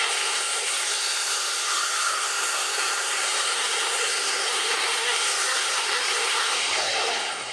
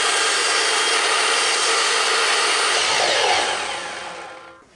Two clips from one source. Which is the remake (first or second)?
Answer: first